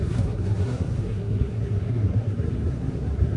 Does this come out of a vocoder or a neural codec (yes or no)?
yes